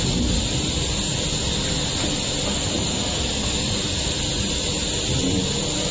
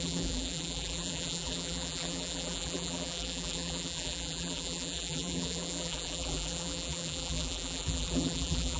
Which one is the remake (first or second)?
second